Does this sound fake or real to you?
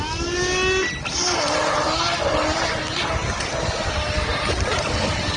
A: real